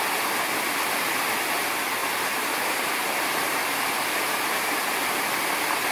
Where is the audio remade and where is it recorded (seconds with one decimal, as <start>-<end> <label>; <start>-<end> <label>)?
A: 0.0-2.0 recorded; 2.0-4.7 remade; 4.7-5.9 recorded